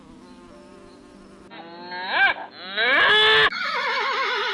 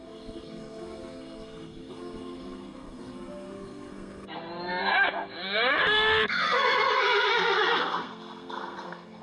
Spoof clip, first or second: second